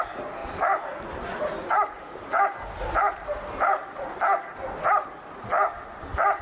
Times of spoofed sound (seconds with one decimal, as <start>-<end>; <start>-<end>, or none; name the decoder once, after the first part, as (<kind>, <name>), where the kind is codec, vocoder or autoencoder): 0.4-4.2 (vocoder, BigVGAN v2)